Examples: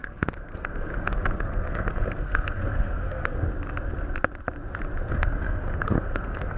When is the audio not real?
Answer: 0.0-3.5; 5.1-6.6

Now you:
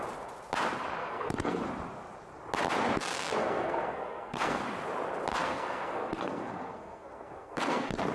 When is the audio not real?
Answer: 1.0-1.6; 3.4-4.6; 5.3-8.1

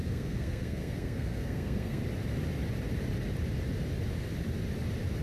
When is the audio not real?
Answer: 0.0-2.0

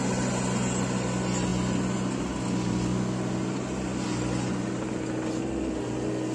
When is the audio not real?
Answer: none

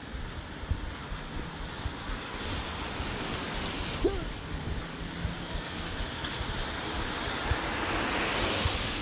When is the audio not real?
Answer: 5.3-6.0

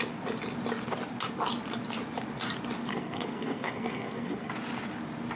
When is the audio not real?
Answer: 2.9-4.5